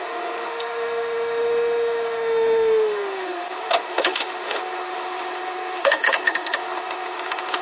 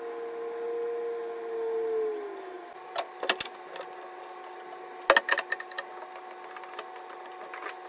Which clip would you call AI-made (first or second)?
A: first